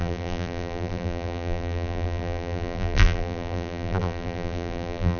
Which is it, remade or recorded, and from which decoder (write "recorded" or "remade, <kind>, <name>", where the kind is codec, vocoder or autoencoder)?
remade, vocoder, BigVGAN v2